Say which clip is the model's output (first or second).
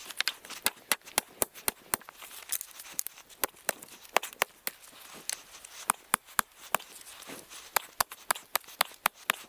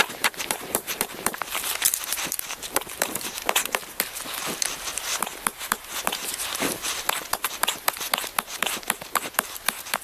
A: second